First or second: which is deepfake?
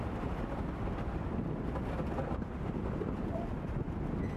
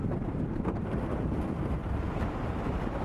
second